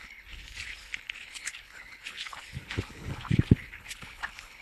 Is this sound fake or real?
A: fake